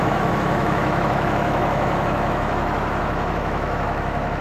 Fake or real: fake